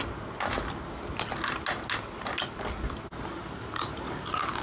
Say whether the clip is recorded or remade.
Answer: recorded